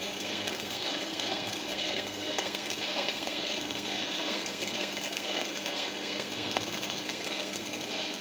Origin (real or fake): fake